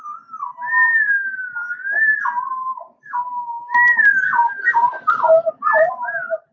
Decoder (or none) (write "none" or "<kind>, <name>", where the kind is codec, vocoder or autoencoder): none